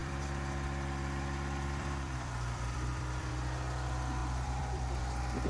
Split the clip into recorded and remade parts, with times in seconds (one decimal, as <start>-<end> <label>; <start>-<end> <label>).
0.0-3.3 remade; 3.3-4.2 recorded; 4.2-5.0 remade; 5.0-5.5 recorded